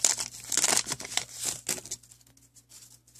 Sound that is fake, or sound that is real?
real